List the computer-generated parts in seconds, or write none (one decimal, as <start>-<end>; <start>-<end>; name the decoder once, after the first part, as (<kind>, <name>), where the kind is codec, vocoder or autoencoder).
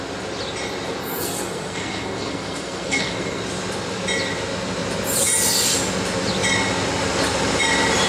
1.0-3.4 (codec, SNAC)